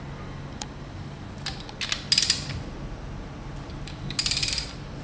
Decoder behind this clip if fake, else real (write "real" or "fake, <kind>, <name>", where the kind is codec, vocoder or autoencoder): real